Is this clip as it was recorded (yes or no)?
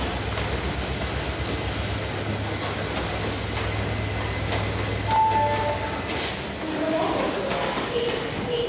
yes